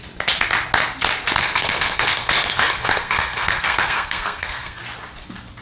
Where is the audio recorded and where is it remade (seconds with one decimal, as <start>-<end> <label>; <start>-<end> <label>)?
0.0-1.4 recorded; 1.4-4.8 remade; 4.8-5.6 recorded